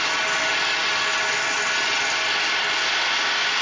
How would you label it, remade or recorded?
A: recorded